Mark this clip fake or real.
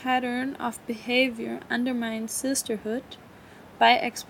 real